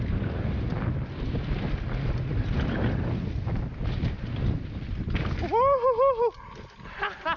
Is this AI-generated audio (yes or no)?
no